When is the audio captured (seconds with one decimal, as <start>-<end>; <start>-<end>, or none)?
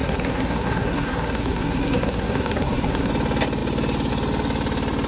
3.1-5.1